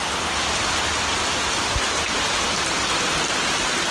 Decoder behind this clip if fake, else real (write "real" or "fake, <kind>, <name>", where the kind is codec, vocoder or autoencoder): real